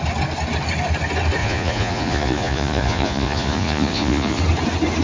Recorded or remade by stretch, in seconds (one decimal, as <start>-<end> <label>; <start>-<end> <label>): 0.0-1.4 recorded; 1.4-4.4 remade; 4.4-5.0 recorded